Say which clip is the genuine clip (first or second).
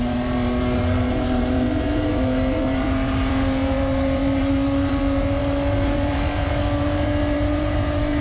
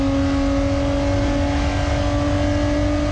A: second